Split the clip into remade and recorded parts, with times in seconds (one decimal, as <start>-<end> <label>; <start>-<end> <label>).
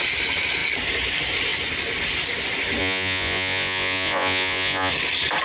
0.0-2.8 recorded; 2.8-4.9 remade; 4.9-5.4 recorded